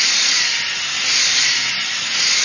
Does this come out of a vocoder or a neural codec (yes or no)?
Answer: no